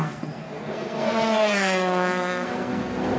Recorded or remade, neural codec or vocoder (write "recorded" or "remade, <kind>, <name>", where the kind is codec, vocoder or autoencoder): remade, codec, SNAC